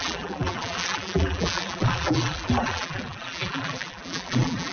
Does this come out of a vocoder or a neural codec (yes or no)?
yes